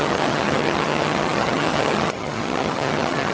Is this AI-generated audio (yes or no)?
yes